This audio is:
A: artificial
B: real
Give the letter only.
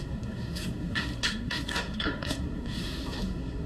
A